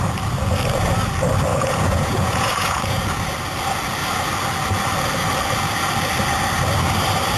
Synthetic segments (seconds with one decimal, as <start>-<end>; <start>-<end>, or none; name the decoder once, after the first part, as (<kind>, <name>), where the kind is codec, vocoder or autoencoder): 1.5-3.0 (vocoder, Vocos)